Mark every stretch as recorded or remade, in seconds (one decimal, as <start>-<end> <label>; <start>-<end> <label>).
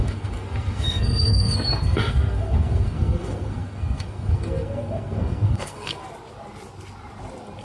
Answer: 0.0-6.0 remade; 6.0-7.6 recorded